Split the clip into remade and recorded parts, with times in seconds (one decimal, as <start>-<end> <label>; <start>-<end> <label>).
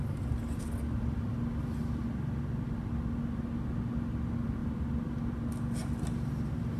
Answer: 0.0-6.8 recorded